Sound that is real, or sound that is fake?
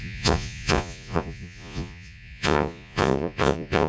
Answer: fake